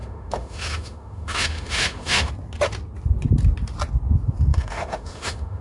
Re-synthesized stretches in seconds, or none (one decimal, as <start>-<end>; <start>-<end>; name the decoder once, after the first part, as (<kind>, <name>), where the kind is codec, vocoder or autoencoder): 0.0-2.3 (autoencoder, DAC-VAE); 4.5-5.6